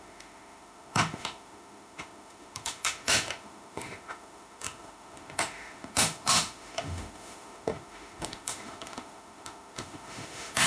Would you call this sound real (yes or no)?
no